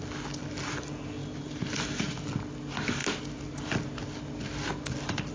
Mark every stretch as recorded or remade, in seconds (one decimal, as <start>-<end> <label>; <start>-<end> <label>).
0.0-1.2 recorded; 1.2-1.7 remade; 1.7-5.3 recorded